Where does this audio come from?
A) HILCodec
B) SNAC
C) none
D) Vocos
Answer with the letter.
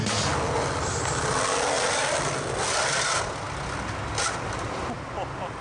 C